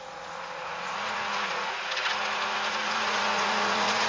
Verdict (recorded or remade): remade